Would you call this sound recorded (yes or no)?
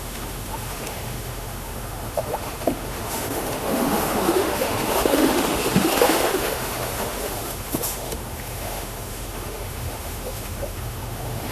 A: no